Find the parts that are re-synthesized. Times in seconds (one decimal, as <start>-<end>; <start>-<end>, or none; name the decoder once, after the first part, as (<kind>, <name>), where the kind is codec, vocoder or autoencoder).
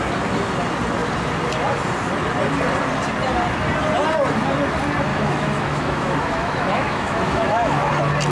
5.1-7.9 (autoencoder, DAC-VAE)